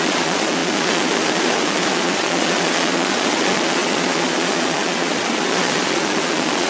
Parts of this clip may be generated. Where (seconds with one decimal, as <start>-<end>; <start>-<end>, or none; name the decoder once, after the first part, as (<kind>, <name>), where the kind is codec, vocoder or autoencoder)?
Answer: 0.0-6.7 (vocoder, Vocos)